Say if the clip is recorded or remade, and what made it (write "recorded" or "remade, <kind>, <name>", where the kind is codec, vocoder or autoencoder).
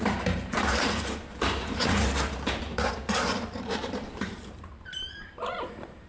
remade, vocoder, BigVGAN v2